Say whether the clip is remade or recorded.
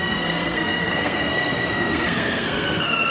remade